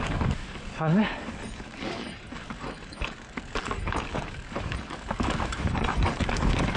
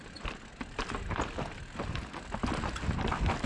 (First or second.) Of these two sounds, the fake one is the first